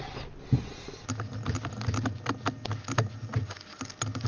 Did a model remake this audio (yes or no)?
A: no